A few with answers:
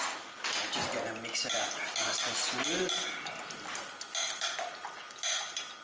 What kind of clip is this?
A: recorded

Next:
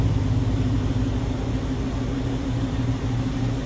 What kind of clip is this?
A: recorded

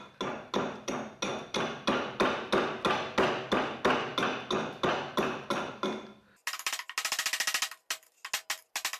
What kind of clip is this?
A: recorded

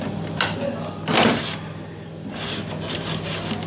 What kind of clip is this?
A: recorded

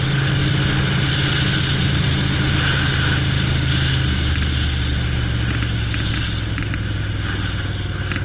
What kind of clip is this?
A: recorded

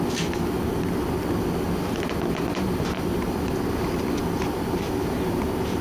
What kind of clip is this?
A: recorded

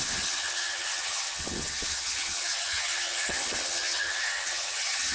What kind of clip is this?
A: remade